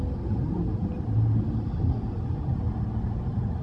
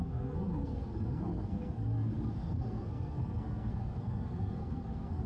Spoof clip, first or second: second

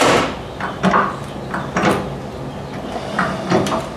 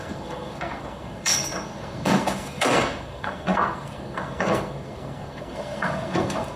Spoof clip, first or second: second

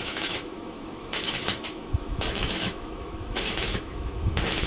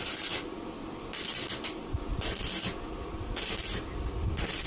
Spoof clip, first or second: first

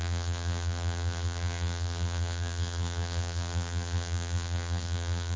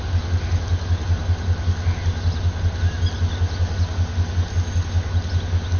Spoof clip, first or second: first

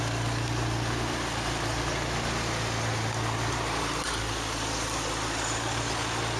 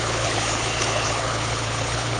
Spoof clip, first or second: second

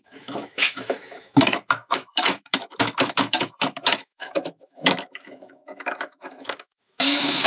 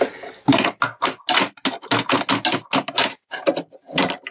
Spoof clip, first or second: first